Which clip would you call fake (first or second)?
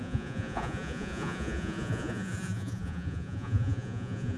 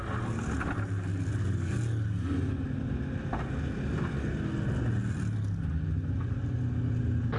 first